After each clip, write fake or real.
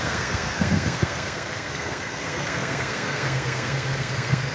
fake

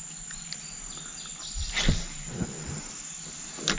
real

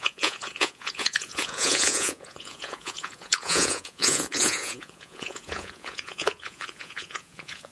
fake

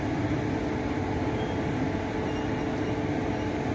real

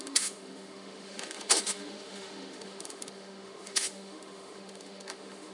fake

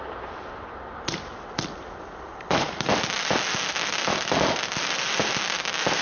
fake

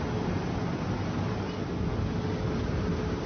real